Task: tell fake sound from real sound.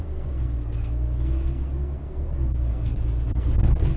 fake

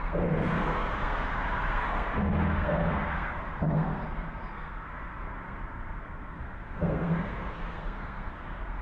fake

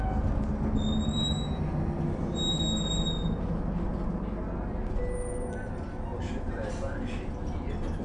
real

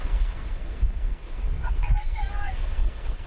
fake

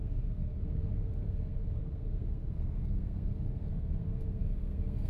fake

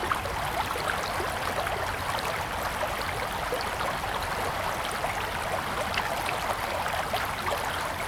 real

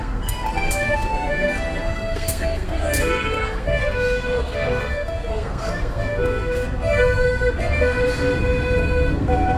fake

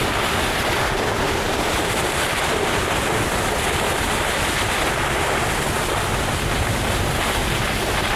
real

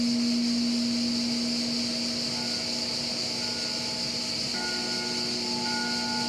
real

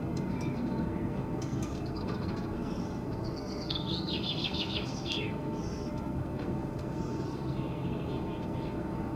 fake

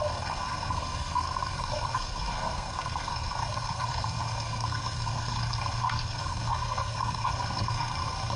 fake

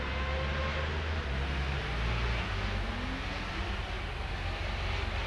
real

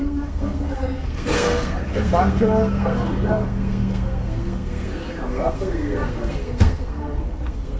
fake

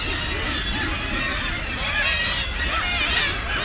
real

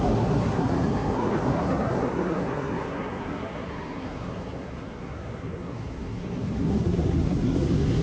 fake